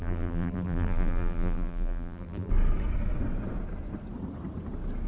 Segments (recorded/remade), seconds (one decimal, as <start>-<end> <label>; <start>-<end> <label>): 0.0-2.5 remade; 2.5-5.1 recorded